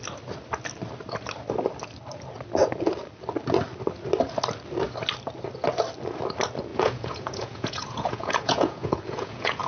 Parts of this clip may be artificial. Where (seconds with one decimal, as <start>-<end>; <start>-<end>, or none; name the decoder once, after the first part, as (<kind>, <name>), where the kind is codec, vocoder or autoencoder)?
6.7-9.7 (vocoder, Vocos)